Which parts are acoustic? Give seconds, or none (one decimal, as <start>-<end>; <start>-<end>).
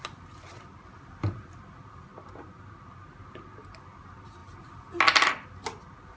0.0-6.2